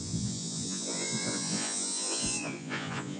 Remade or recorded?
remade